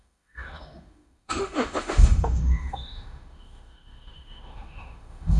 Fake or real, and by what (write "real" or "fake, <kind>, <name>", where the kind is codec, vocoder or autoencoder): fake, autoencoder, DAC-VAE